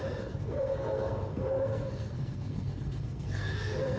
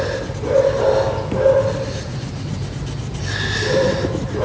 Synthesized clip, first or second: first